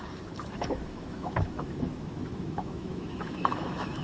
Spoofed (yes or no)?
yes